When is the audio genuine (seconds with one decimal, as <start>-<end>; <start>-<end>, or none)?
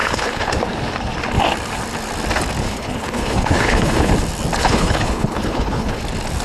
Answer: 0.5-2.6; 4.1-4.6; 6.0-6.4